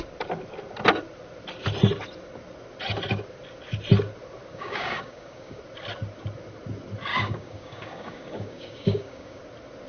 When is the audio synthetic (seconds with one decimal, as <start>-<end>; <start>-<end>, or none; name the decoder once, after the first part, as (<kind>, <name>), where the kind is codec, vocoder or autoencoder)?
4.5-5.6 (codec, DAC); 7.1-9.4